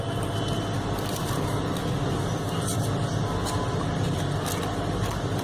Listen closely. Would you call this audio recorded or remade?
recorded